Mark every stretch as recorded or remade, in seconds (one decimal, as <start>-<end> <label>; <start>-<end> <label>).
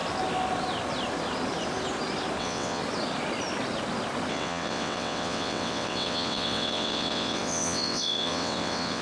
0.0-2.4 recorded; 2.4-2.8 remade; 2.8-4.3 recorded; 4.3-9.0 remade